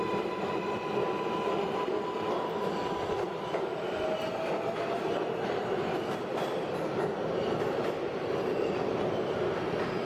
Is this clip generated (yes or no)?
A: no